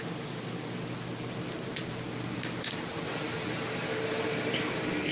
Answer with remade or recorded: recorded